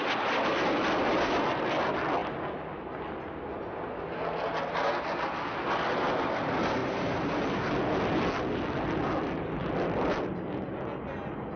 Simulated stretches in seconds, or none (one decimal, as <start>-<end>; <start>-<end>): 6.8-7.7